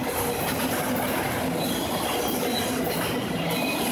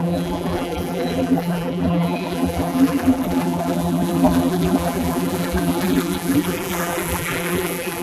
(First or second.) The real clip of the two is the first